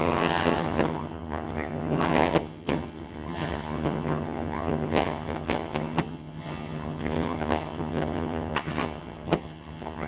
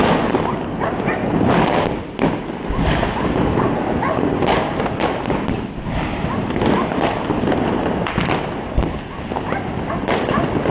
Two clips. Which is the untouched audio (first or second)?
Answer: second